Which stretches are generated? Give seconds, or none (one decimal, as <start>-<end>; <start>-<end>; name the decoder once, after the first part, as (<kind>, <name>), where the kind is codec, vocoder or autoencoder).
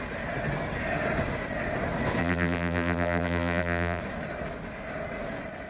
2.2-4.0 (vocoder, BigVGAN v2)